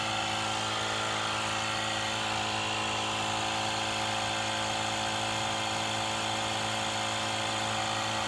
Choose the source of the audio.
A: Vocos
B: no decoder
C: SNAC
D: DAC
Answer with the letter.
B